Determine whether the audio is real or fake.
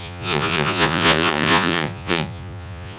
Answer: fake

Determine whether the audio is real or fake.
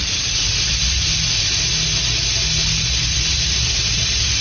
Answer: real